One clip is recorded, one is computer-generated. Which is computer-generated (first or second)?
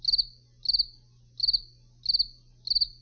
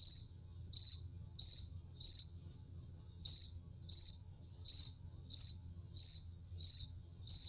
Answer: second